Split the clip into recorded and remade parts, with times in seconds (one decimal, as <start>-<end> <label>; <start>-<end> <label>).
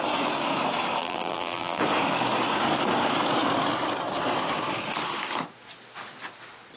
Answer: 0.0-1.0 recorded; 1.0-1.8 remade; 1.8-6.8 recorded